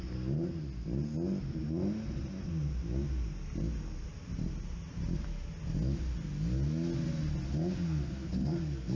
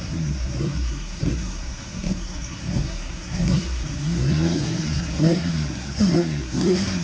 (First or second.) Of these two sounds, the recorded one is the first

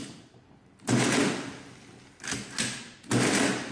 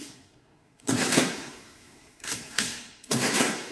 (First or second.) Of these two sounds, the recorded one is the first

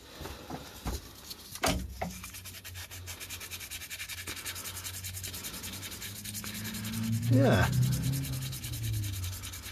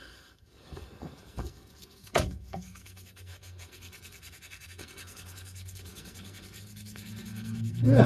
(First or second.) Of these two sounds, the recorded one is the first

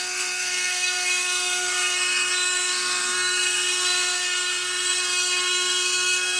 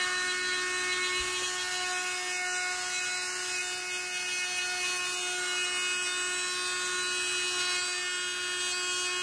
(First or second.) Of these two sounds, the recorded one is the second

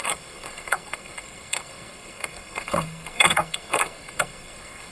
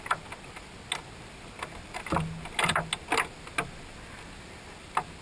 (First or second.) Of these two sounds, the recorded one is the second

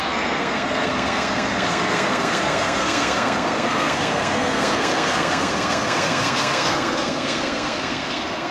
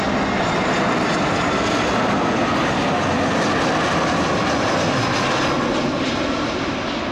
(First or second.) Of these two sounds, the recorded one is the second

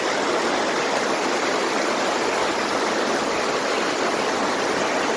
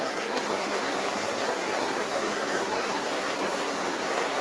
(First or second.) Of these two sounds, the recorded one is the first